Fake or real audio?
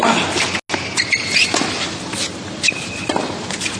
real